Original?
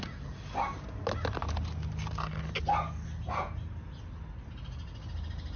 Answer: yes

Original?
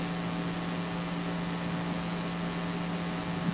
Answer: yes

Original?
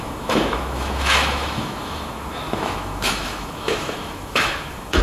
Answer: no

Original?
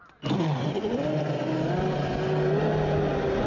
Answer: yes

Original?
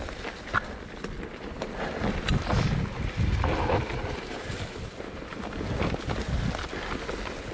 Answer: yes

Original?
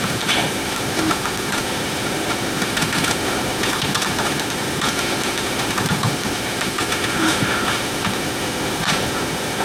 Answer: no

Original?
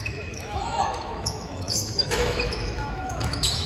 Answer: no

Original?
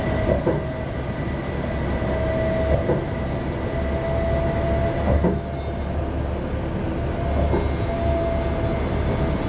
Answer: yes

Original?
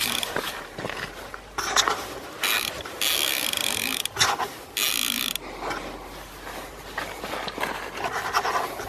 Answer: yes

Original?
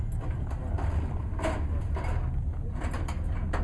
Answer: yes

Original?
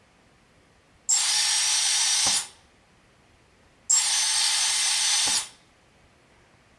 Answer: yes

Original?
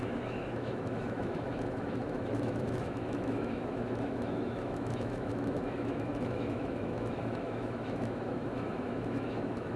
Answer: no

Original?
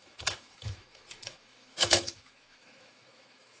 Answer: no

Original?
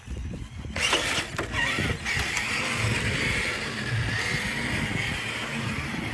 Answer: yes